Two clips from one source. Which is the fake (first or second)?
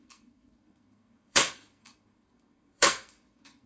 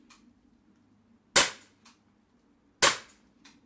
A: first